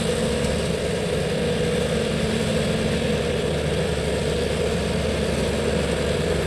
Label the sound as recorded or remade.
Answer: recorded